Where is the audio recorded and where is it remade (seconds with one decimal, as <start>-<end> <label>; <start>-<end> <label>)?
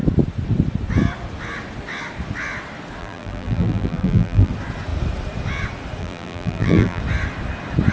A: 0.0-3.0 recorded; 3.0-4.5 remade; 4.5-6.0 recorded; 6.0-7.0 remade; 7.0-7.9 recorded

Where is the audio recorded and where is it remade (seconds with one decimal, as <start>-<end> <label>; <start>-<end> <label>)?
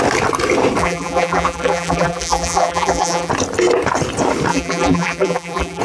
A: 0.0-0.8 recorded; 0.8-3.3 remade; 3.3-4.5 recorded; 4.5-5.8 remade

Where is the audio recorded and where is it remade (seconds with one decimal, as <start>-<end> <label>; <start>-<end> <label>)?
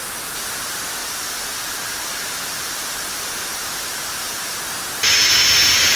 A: 0.0-1.0 recorded; 1.0-4.6 remade; 4.6-6.0 recorded